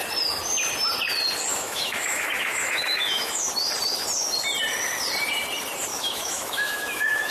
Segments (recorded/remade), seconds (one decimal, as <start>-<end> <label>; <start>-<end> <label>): 0.0-1.5 recorded; 1.5-3.5 remade; 3.5-5.9 recorded; 5.9-7.3 remade